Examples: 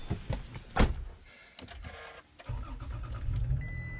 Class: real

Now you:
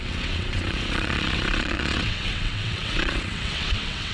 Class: fake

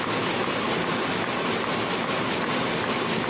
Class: real